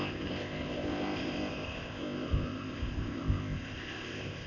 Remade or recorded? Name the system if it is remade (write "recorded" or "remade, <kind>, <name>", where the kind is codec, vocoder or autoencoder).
remade, codec, ZipCodec